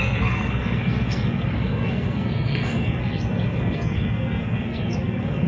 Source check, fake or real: fake